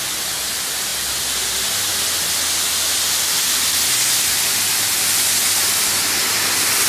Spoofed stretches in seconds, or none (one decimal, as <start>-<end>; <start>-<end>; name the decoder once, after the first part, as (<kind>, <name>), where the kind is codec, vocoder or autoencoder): none